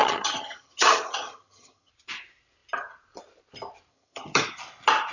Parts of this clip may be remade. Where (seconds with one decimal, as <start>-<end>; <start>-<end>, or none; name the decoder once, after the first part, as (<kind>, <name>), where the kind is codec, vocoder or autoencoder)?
0.0-1.9 (vocoder, HiFi-GAN); 3.9-4.4